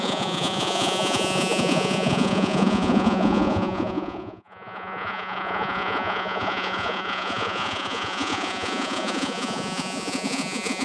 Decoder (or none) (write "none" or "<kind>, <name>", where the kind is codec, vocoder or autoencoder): vocoder, Vocos